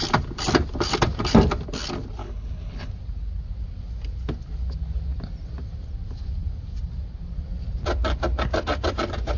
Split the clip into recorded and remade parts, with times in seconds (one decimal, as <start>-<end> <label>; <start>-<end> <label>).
0.0-2.2 recorded; 2.2-2.9 remade; 2.9-9.4 recorded